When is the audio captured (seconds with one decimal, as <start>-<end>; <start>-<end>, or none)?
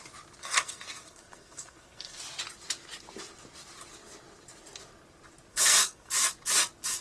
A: 0.0-0.4; 2.2-5.5; 6.1-7.0